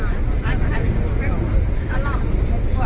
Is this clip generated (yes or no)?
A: no